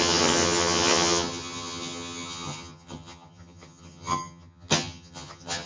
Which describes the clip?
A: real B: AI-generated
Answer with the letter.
B